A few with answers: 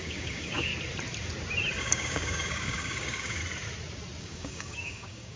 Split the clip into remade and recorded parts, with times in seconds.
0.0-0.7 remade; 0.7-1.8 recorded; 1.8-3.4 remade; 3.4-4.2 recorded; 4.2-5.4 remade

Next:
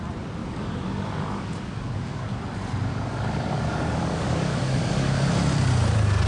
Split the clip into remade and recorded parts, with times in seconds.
0.0-0.4 recorded; 0.4-2.3 remade; 2.3-2.9 recorded; 2.9-5.3 remade; 5.3-6.3 recorded

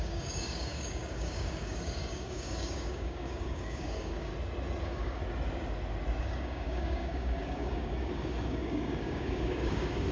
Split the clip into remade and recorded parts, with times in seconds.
0.0-4.3 remade; 4.3-4.8 recorded; 4.8-5.2 remade; 5.2-6.2 recorded; 6.2-10.1 remade

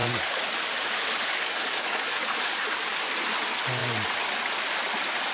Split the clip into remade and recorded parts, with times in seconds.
0.0-3.0 remade; 3.0-5.3 recorded